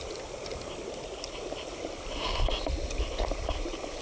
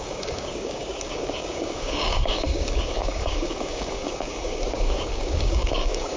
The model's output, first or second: second